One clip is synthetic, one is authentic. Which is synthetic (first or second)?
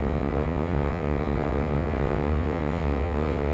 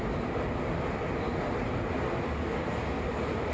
first